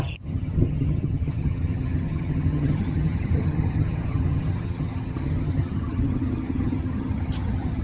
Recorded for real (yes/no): no